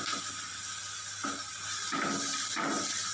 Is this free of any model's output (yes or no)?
yes